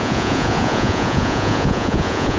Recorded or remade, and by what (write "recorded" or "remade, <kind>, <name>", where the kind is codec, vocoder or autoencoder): remade, vocoder, Vocos